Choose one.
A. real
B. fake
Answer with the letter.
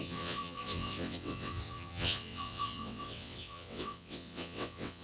B